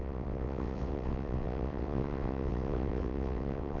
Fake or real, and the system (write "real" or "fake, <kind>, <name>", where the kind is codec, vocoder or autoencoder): fake, vocoder, WaveNeXt